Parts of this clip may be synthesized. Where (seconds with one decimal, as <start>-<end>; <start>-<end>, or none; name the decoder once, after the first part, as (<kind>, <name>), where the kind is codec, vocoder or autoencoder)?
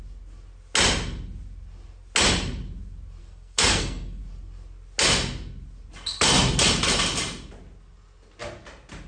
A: 3.2-4.2 (codec, SNAC)